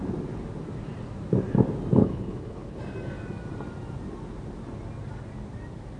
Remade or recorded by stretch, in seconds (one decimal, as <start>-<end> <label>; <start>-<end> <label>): 0.0-2.0 recorded; 2.0-2.8 remade; 2.8-6.0 recorded